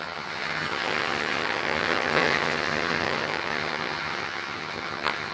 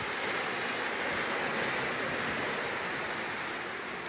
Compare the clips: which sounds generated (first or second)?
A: first